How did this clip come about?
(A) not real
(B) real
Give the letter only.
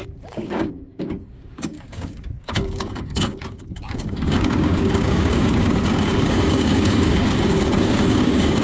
A